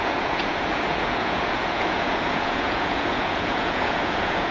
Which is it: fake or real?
fake